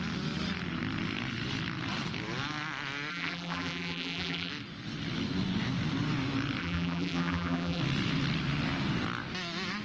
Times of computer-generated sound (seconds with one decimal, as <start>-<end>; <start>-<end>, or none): 3.1-4.5; 6.6-7.8